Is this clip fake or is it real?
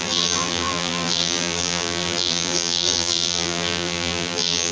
fake